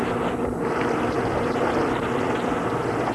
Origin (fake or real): real